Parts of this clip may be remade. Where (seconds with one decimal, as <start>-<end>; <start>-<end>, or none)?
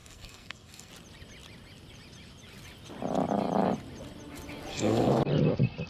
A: 0.0-0.9; 4.7-5.2